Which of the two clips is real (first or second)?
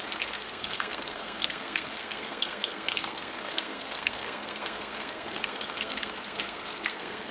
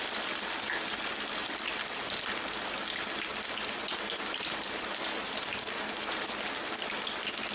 second